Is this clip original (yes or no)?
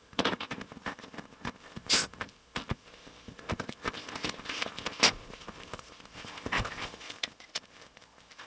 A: no